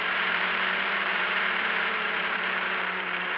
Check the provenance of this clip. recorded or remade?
remade